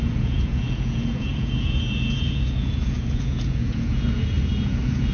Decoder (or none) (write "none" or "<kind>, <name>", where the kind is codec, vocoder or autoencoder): vocoder, Vocos